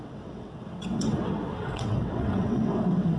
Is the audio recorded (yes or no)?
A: no